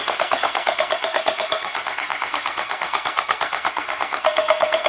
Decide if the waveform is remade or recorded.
remade